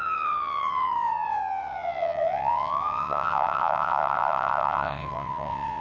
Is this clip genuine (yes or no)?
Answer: no